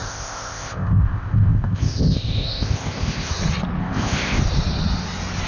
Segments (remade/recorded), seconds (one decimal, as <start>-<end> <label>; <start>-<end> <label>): 0.0-3.3 remade; 3.3-3.8 recorded; 3.8-4.4 remade; 4.4-5.5 recorded